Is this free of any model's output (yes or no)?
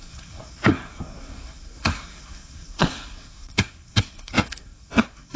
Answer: no